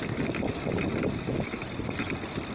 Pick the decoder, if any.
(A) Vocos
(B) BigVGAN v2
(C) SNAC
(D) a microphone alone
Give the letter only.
B